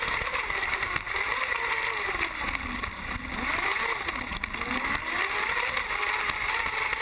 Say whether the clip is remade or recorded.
recorded